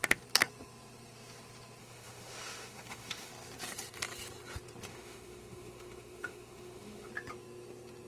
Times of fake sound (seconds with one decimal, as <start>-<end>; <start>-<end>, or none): 1.8-3.3; 4.9-7.1